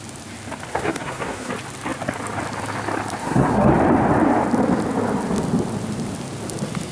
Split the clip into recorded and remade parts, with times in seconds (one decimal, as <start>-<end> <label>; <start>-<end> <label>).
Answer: 0.0-0.7 recorded; 0.7-1.5 remade; 1.5-3.2 recorded; 3.2-3.7 remade; 3.7-6.9 recorded

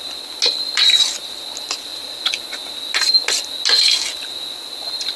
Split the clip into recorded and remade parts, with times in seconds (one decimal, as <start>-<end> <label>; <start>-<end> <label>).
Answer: 0.0-5.2 recorded

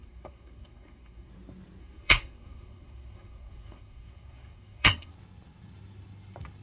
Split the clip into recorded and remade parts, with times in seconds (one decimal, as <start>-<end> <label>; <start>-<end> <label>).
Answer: 0.0-1.3 remade; 1.3-1.8 recorded; 1.8-5.1 remade; 5.1-6.6 recorded

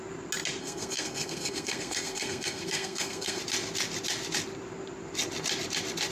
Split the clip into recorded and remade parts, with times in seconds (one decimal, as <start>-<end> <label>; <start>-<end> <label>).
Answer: 0.0-0.6 recorded; 0.6-3.4 remade; 3.4-6.1 recorded

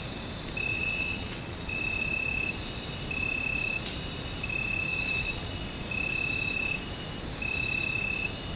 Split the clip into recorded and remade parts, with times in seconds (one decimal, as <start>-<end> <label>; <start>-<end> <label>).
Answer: 0.0-0.7 recorded; 0.7-1.8 remade; 1.8-4.9 recorded; 4.9-5.6 remade; 5.6-8.6 recorded

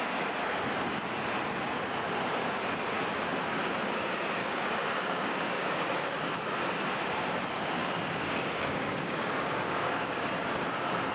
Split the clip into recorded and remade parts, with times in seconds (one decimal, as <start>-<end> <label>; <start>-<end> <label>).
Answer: 0.0-4.4 recorded; 4.4-6.2 remade; 6.2-7.8 recorded; 7.8-10.3 remade; 10.3-11.1 recorded